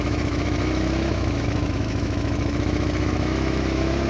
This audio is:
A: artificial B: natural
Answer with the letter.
A